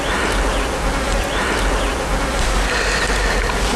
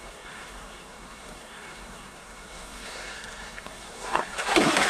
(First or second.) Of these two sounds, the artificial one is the second